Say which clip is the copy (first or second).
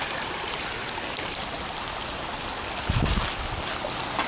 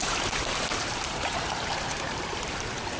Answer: second